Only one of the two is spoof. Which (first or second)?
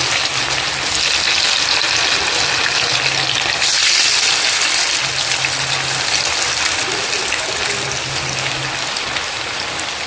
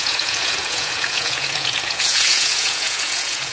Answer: second